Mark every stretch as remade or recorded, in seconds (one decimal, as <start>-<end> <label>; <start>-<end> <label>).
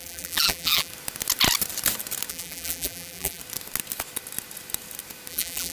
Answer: 0.0-0.9 remade; 0.9-2.3 recorded; 2.3-3.4 remade; 3.4-5.3 recorded; 5.3-5.7 remade